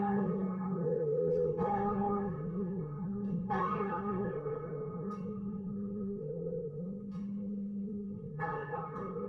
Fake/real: fake